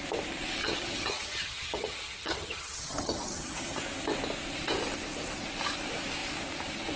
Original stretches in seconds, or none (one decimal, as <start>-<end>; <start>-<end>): 0.0-0.6; 3.8-7.0